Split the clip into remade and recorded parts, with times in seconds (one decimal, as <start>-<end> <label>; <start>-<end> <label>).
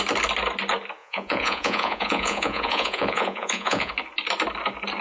0.0-1.0 recorded; 1.0-3.9 remade; 3.9-5.0 recorded